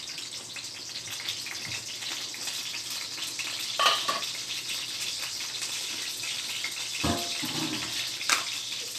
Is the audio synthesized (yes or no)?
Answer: no